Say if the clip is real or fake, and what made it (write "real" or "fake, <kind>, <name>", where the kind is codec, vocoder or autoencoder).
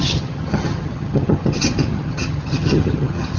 fake, vocoder, HiFi-GAN